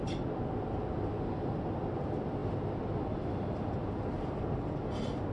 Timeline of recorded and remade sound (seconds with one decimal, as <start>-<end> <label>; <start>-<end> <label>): 0.0-5.3 recorded